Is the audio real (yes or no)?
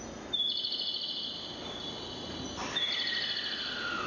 yes